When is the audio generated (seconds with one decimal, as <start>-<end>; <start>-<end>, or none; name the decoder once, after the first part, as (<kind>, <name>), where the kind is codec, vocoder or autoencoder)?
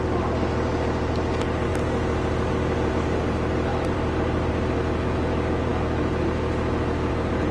3.7-4.5 (vocoder, BigVGAN v2)